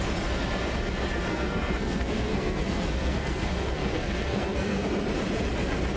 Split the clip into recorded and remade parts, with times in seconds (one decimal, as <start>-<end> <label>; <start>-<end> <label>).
0.0-1.3 recorded; 1.3-4.9 remade; 4.9-6.0 recorded